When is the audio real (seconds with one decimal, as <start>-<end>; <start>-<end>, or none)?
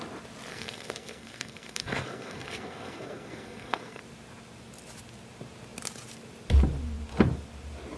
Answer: 0.0-0.5; 4.0-8.0